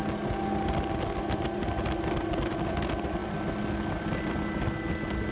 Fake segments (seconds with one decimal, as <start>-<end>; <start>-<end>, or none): none